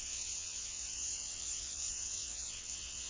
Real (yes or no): no